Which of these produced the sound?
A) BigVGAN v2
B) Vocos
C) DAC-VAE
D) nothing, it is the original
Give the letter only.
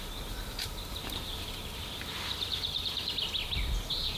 D